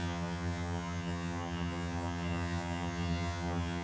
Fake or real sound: fake